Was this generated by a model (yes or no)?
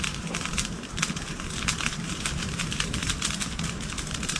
yes